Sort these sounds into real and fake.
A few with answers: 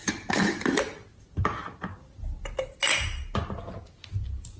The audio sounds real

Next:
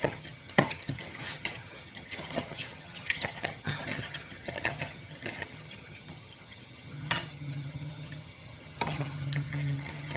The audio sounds fake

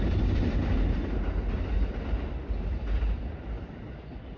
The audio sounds real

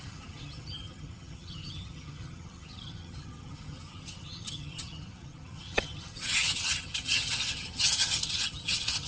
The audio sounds fake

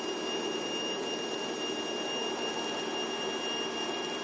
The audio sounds real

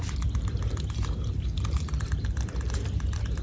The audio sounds real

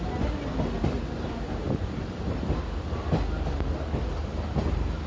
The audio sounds real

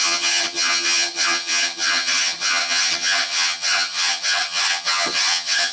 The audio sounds fake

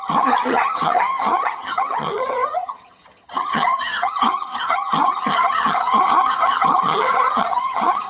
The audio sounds fake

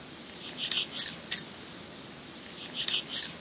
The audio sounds real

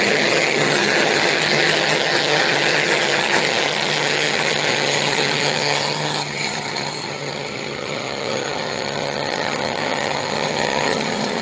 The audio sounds fake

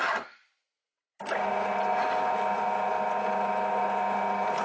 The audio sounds real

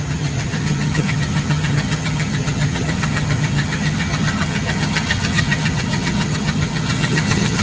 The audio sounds fake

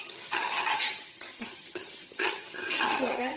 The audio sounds fake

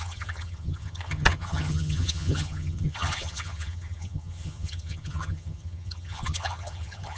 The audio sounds fake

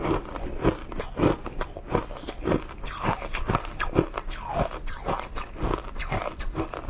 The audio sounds real